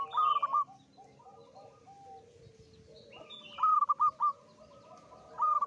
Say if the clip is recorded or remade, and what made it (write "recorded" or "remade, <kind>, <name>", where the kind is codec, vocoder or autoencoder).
recorded